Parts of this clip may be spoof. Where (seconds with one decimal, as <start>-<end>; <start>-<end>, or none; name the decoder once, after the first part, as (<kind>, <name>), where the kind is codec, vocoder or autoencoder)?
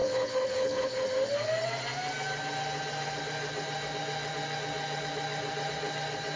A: 0.0-1.0 (codec, HILCodec)